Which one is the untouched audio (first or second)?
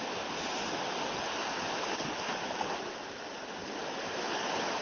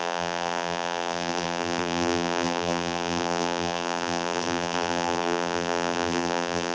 first